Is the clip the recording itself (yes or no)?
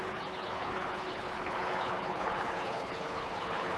no